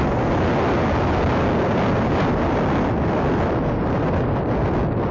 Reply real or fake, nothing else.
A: real